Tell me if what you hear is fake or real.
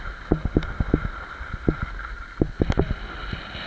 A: real